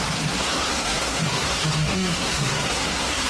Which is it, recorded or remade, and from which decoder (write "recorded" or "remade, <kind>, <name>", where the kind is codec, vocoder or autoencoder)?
remade, codec, SNAC